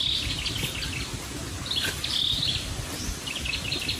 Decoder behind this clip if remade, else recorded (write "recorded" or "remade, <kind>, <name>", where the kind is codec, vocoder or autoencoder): recorded